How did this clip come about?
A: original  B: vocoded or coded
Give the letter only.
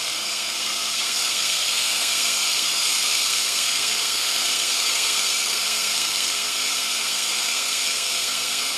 B